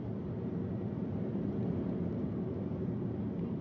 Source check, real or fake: real